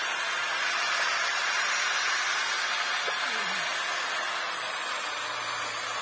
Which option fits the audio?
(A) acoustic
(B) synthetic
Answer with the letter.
A